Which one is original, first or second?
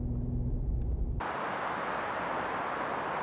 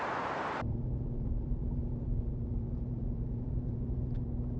first